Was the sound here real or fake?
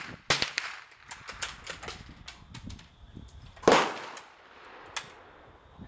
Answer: real